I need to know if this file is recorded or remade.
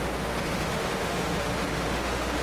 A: remade